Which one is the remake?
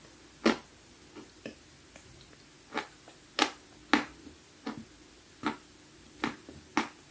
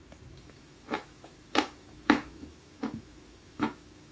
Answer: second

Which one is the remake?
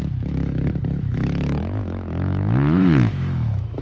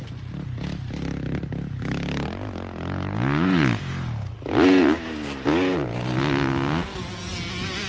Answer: first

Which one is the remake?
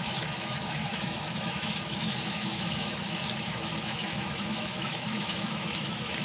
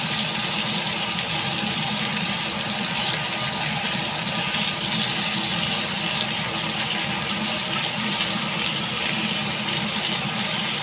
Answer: first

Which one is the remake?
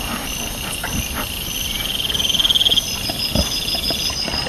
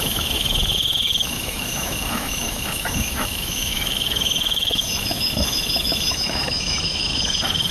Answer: second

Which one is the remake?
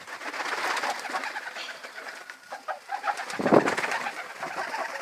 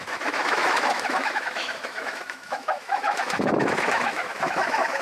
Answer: second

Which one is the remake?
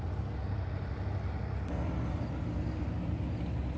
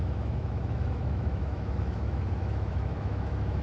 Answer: second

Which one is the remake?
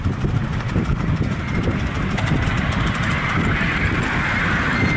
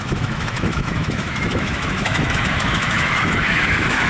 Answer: second